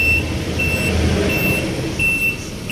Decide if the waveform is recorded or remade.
recorded